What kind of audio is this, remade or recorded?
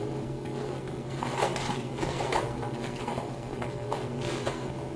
remade